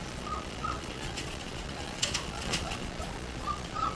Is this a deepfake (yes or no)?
yes